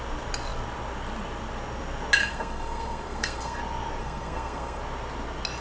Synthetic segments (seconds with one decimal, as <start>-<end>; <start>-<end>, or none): 2.2-3.6; 4.0-4.8